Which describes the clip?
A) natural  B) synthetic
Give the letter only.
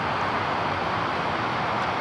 A